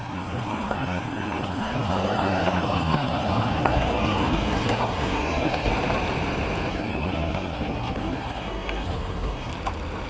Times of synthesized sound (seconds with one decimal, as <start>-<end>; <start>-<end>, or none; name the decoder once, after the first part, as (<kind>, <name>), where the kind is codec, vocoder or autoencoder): 0.0-5.7 (codec, SNAC); 6.7-9.5